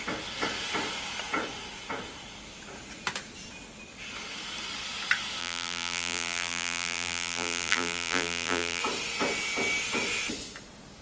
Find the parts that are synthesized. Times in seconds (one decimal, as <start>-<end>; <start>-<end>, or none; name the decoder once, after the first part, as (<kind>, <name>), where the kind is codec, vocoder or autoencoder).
5.4-8.8 (vocoder, BigVGAN v2)